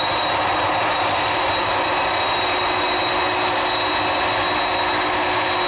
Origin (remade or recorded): recorded